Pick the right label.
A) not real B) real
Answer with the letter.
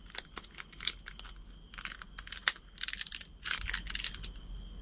B